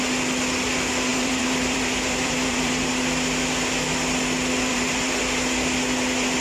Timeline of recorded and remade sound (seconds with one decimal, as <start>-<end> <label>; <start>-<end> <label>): 0.0-1.1 recorded; 1.1-2.9 remade; 2.9-4.7 recorded; 4.7-5.2 remade; 5.2-6.4 recorded